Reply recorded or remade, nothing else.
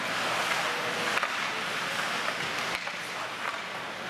recorded